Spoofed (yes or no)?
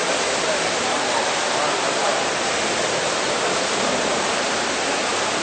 no